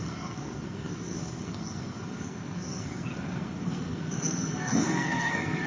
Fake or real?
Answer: fake